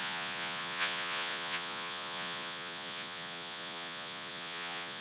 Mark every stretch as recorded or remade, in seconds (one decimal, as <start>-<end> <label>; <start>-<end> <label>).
0.0-5.0 remade

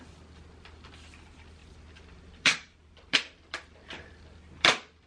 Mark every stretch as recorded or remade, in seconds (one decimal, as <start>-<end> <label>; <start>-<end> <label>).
0.0-1.6 recorded; 1.6-5.1 remade

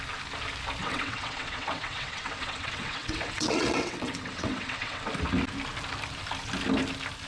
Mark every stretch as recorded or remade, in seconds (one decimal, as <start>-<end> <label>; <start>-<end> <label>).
0.0-0.8 recorded; 0.8-5.1 remade; 5.1-7.3 recorded

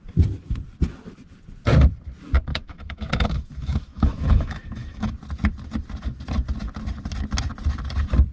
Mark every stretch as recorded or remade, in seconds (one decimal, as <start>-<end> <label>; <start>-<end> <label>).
0.0-2.5 recorded; 2.5-5.1 remade; 5.1-8.3 recorded